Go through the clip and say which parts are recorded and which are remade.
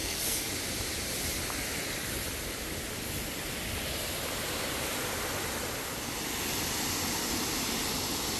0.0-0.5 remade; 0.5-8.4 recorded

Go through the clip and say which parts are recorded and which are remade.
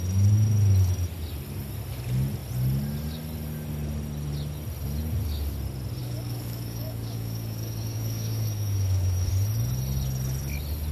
0.0-6.0 recorded; 6.0-9.3 remade; 9.3-10.9 recorded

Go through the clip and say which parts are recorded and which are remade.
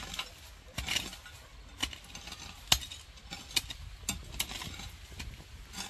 0.0-5.9 recorded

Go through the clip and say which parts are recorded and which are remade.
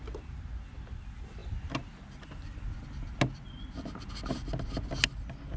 0.0-5.6 recorded